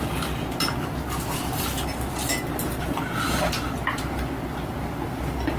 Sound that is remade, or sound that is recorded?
recorded